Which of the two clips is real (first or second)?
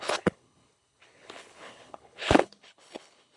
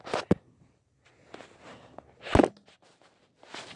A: second